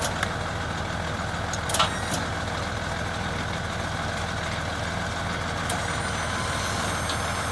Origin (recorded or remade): recorded